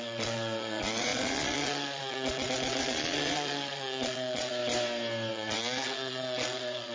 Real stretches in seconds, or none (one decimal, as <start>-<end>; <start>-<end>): 4.6-5.3